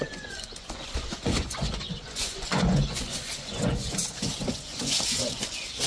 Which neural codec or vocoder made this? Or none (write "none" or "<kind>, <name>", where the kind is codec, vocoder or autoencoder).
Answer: vocoder, Vocos